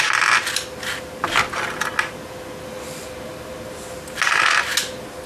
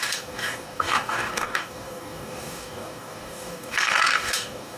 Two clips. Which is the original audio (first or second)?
first